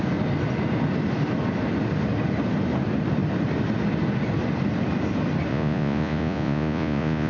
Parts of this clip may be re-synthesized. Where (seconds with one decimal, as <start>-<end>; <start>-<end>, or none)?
5.5-7.3